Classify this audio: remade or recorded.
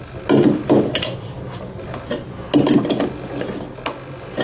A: recorded